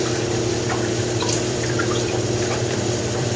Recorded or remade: remade